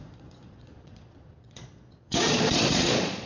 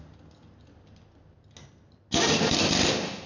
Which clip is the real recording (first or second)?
second